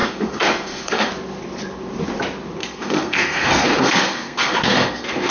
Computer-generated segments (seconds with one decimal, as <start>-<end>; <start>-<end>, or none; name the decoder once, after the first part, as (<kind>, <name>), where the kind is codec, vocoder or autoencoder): 0.0-1.1 (codec, SNAC); 2.6-5.3